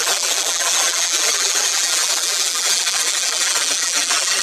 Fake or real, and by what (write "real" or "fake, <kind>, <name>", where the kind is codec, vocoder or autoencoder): fake, vocoder, BigVGAN v2